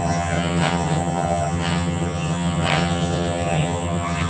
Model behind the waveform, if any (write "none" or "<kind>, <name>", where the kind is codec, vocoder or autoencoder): vocoder, HiFi-GAN